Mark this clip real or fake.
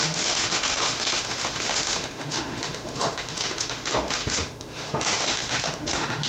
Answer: fake